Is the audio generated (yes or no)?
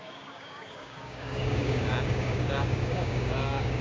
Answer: yes